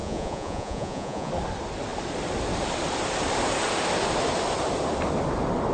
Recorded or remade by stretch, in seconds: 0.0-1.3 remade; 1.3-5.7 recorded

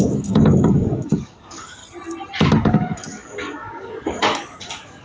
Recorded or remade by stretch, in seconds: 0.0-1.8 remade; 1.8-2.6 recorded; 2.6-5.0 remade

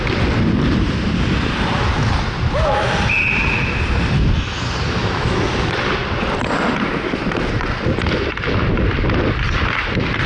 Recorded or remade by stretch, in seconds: 0.0-5.0 recorded; 5.0-5.5 remade; 5.5-10.3 recorded

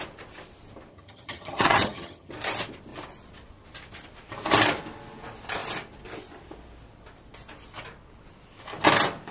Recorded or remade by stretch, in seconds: 0.0-0.9 recorded; 0.9-2.3 remade; 2.3-9.3 recorded

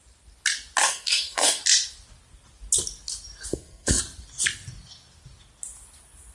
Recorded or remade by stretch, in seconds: 0.0-0.8 recorded; 0.8-1.6 remade; 1.6-3.5 recorded; 3.5-4.0 remade; 4.0-6.3 recorded

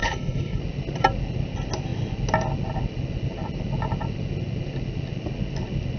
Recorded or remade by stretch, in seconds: 0.0-0.6 remade; 0.6-6.0 recorded

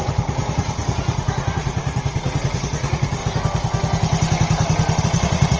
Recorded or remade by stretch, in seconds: 0.0-3.2 remade; 3.2-5.0 recorded; 5.0-5.6 remade

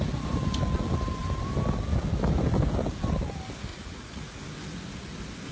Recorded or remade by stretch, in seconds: 0.0-3.7 recorded; 3.7-4.4 remade; 4.4-5.5 recorded